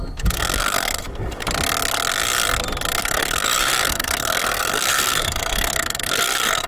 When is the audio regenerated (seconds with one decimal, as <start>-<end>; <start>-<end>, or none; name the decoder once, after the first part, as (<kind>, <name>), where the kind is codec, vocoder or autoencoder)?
0.0-1.4 (codec, SNAC); 3.0-6.7